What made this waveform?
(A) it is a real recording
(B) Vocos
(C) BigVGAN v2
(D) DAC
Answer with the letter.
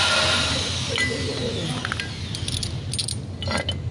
A